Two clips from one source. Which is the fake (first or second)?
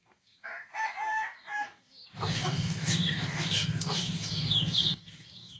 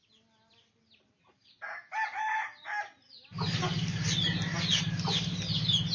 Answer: first